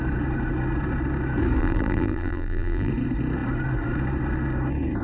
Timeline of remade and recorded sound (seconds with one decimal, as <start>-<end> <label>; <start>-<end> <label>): 0.0-1.6 recorded; 1.6-2.9 remade; 2.9-5.0 recorded